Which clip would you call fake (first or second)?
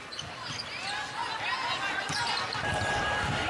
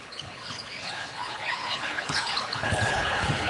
second